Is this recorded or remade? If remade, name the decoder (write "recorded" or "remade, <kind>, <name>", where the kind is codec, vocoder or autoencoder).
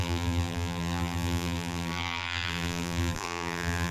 remade, vocoder, BigVGAN v2